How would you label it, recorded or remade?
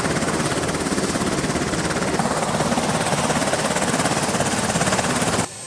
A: recorded